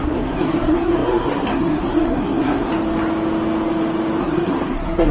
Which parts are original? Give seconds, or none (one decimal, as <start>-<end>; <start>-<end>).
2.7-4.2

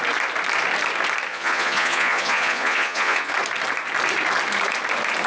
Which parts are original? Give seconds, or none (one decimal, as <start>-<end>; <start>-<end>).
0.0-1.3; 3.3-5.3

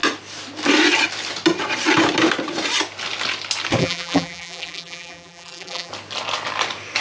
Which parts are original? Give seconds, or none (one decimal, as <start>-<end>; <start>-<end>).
0.0-3.8; 5.9-7.0

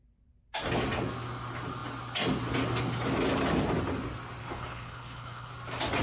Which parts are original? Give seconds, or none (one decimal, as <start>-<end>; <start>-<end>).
0.0-4.4; 5.5-6.0

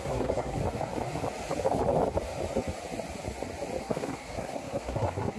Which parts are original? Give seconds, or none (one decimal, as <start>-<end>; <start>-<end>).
0.6-3.8